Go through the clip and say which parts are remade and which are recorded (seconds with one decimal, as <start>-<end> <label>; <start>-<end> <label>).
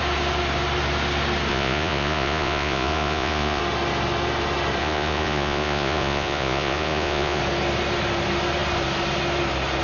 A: 0.0-1.5 recorded; 1.5-3.6 remade; 3.6-4.8 recorded; 4.8-7.4 remade; 7.4-9.8 recorded